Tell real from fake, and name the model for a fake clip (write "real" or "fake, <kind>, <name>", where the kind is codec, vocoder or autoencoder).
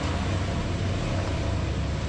real